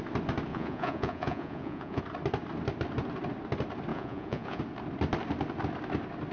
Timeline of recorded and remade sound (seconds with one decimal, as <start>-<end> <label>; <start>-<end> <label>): 0.0-0.5 recorded; 0.5-2.0 remade; 2.0-3.9 recorded; 3.9-4.6 remade; 4.6-6.3 recorded